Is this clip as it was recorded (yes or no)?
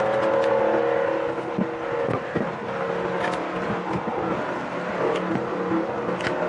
yes